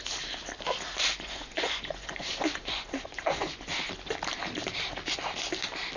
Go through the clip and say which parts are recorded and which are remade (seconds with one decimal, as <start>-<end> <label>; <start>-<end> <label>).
0.0-1.1 recorded; 1.1-3.6 remade; 3.6-6.0 recorded